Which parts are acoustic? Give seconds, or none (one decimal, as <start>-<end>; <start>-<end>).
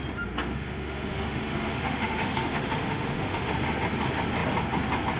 0.0-0.4; 3.5-5.2